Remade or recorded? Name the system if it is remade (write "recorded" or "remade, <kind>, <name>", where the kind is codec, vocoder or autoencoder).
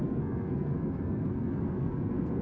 remade, codec, SNAC